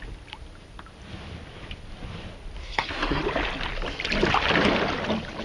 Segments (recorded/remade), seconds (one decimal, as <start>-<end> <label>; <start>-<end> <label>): 0.0-2.6 recorded; 2.6-3.2 remade; 3.2-5.4 recorded